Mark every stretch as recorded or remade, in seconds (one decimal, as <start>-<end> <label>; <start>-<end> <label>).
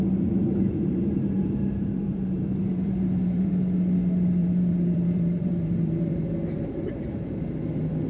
0.0-3.6 remade; 3.6-4.4 recorded; 4.4-7.4 remade; 7.4-8.1 recorded